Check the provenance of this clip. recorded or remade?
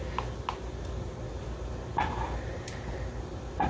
recorded